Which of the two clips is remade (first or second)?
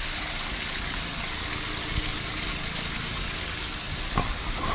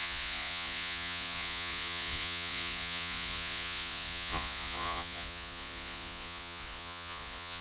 second